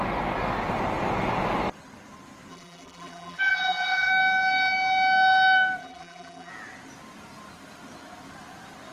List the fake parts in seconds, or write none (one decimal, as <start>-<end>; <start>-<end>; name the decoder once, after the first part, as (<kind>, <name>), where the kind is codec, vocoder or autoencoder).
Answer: 2.5-4.1 (vocoder, BigVGAN v2); 5.8-6.5